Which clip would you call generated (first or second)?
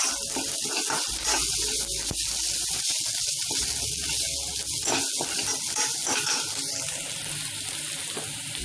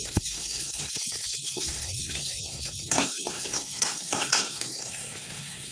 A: second